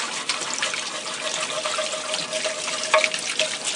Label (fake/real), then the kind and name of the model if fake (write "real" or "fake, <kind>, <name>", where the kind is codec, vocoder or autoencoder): real